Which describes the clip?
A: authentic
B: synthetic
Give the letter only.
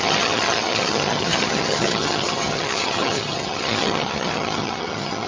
B